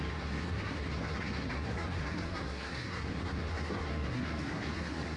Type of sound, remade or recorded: remade